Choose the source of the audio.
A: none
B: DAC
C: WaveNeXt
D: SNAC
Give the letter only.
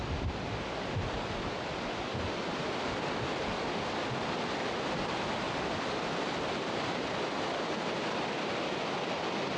A